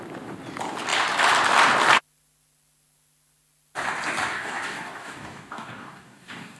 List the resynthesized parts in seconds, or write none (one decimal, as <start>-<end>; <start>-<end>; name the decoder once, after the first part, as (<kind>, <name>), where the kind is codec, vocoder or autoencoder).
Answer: 4.3-6.6 (codec, DAC)